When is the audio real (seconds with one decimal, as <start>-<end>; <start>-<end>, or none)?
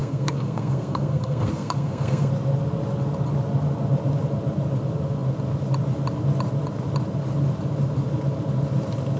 2.3-9.2